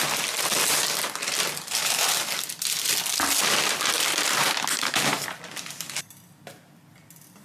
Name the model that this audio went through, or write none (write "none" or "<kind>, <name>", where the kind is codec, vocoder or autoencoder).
none